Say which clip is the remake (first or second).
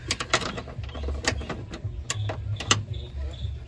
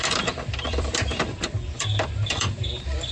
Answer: second